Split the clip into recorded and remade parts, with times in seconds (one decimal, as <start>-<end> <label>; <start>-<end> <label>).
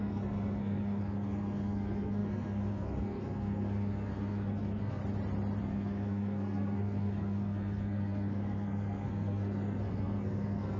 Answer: 0.0-5.0 remade; 5.0-5.6 recorded; 5.6-10.8 remade